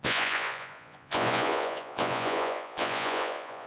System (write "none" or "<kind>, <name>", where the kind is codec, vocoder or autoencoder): vocoder, Vocos